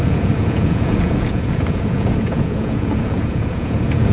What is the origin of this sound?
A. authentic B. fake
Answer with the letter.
B